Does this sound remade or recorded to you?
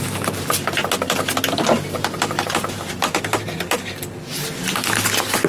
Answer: recorded